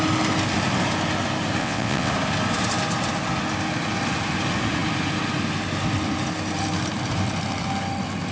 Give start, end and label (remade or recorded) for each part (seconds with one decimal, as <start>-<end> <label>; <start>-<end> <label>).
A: 0.0-1.6 recorded; 1.6-2.1 remade; 2.1-8.3 recorded